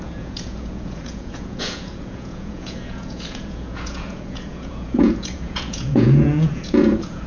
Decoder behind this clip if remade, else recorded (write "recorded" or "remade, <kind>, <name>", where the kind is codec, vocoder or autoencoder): remade, vocoder, Vocos